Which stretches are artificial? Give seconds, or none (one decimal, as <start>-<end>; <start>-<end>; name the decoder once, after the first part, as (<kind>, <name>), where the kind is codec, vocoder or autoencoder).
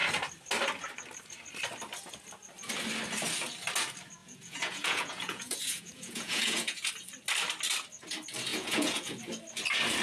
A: 4.2-6.9 (vocoder, Vocos); 8.5-9.2